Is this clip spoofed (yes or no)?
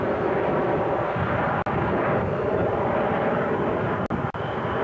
no